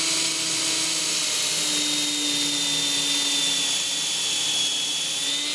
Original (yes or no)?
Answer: yes